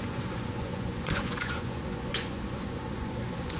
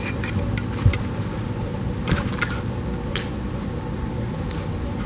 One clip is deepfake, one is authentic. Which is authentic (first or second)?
second